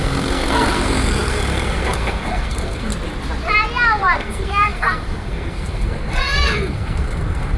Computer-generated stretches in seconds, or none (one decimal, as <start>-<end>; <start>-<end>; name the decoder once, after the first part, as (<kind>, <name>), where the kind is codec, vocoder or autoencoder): 0.0-2.9 (codec, SNAC); 4.0-7.6